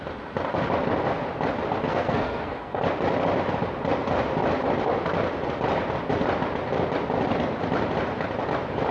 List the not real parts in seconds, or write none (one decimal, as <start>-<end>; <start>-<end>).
1.9-2.8